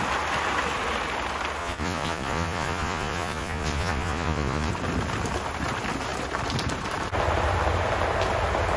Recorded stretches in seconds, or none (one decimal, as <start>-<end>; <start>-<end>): 0.0-1.6; 4.7-8.8